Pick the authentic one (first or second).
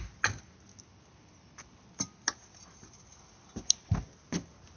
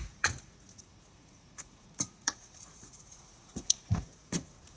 first